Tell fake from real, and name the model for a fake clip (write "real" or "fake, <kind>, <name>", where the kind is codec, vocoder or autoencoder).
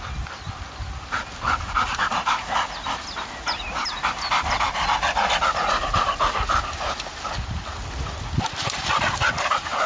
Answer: real